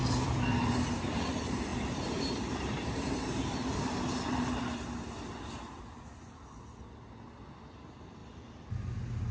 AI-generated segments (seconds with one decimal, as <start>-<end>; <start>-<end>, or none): 0.0-0.7; 1.7-5.4; 8.2-8.7